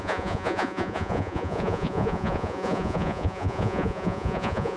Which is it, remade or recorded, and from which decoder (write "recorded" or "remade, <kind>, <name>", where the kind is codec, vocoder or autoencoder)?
remade, vocoder, Vocos